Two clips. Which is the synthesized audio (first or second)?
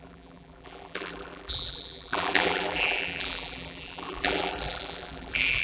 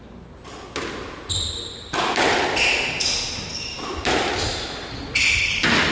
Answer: first